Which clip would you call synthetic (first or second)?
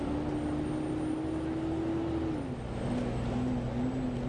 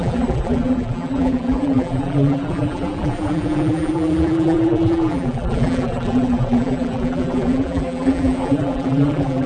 second